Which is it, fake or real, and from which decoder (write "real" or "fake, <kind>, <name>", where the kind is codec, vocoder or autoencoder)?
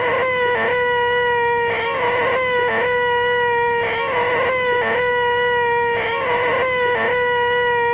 real